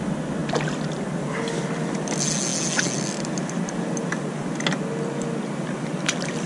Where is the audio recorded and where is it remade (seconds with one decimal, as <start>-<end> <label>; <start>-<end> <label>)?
0.0-6.5 recorded